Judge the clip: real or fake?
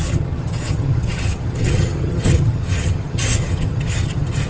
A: fake